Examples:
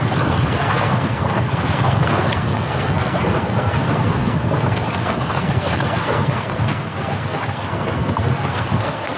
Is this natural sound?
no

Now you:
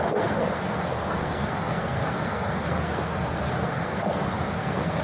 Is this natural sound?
no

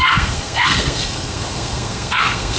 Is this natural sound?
no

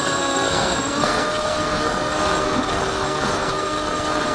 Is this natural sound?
no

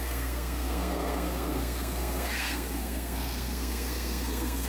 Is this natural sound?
no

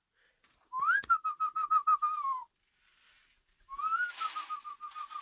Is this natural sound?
yes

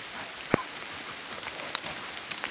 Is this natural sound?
yes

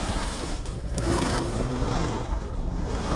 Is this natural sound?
no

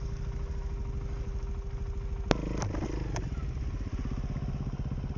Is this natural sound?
yes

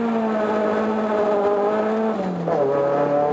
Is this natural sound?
yes